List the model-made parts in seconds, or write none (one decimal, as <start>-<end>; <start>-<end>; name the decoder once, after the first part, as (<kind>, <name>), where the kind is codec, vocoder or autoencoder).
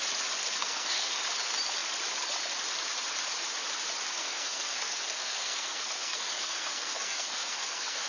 0.4-1.1 (codec, SNAC); 4.2-8.1